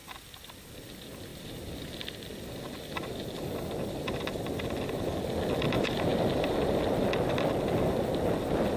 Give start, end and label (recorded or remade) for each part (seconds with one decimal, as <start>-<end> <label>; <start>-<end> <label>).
0.0-8.8 recorded